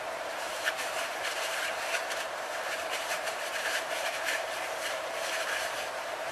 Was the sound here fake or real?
fake